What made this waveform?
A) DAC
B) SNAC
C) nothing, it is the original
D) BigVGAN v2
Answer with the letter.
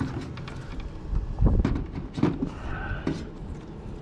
C